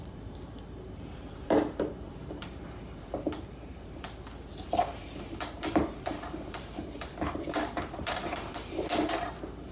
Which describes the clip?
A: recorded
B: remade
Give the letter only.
B